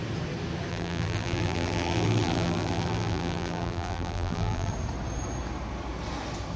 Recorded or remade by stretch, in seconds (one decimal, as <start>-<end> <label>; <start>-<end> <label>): 0.0-0.7 recorded; 0.7-4.7 remade; 4.7-6.6 recorded